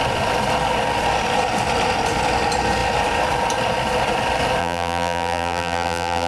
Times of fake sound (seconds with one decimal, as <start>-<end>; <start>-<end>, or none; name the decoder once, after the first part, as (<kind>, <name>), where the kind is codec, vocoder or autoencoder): 4.6-6.3 (vocoder, BigVGAN v2)